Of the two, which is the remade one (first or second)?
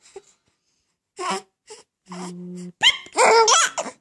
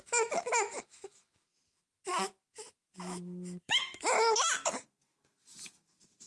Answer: second